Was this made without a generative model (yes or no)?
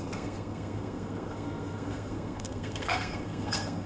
no